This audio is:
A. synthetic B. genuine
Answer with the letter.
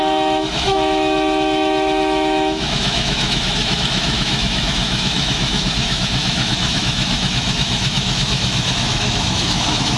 A